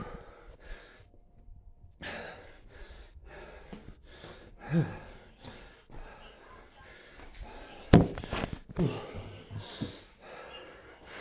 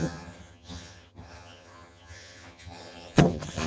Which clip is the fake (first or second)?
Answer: second